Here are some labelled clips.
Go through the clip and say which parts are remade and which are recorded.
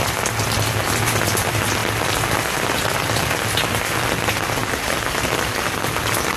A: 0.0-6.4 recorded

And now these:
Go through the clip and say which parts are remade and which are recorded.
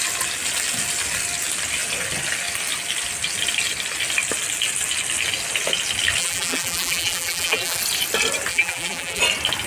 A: 0.0-6.2 recorded; 6.2-7.8 remade; 7.8-8.5 recorded; 8.5-9.2 remade; 9.2-9.7 recorded